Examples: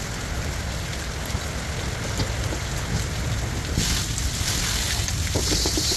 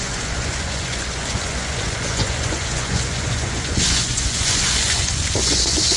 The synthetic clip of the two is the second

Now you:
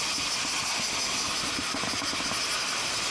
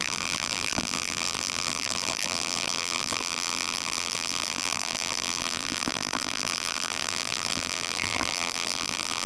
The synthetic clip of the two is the second